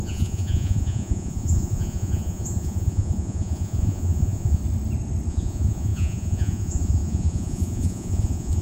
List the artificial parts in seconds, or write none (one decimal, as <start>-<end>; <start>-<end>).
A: 0.0-4.6; 5.3-8.6